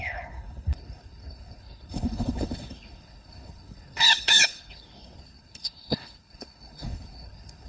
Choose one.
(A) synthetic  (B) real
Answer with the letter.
A